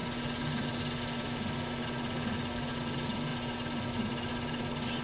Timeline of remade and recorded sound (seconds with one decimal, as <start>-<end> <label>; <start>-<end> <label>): 0.0-5.0 recorded